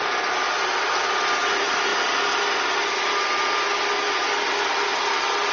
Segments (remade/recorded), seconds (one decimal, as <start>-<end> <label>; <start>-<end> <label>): 0.0-5.5 recorded